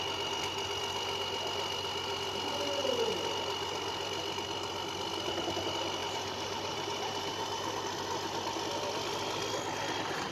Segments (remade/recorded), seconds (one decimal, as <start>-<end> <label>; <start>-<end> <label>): 0.0-6.0 recorded; 6.0-7.8 remade; 7.8-10.3 recorded